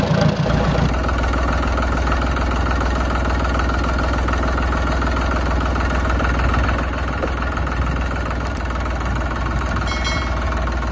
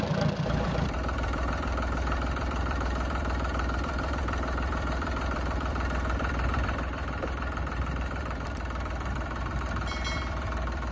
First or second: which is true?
first